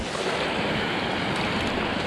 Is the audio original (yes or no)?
yes